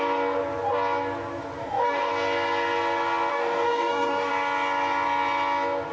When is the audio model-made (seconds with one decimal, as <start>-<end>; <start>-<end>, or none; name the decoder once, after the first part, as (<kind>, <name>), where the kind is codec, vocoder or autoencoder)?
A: 1.6-2.1 (codec, DAC); 3.3-4.3